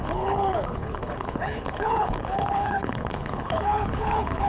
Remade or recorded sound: remade